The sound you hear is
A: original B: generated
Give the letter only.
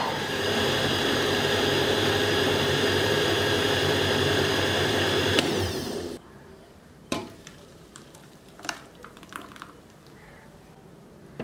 B